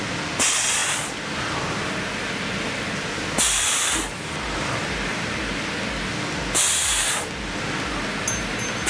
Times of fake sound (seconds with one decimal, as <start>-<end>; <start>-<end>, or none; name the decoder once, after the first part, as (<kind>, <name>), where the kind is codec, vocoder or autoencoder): none